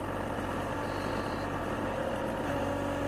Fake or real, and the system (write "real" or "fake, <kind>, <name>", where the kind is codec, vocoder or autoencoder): real